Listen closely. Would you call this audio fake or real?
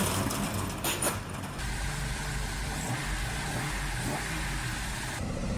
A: real